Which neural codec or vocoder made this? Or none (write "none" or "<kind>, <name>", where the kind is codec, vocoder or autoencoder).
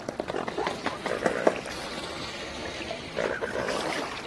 none